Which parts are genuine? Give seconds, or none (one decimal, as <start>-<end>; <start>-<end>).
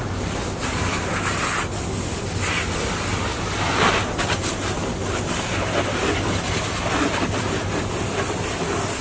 0.0-9.0